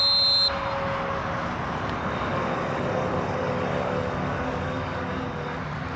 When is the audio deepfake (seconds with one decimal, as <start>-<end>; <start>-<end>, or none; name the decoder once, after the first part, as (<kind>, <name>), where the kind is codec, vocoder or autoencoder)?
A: 2.0-5.6 (codec, DAC)